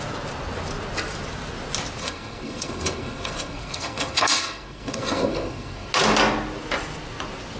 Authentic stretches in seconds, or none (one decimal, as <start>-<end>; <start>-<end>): 0.0-2.0; 5.9-7.6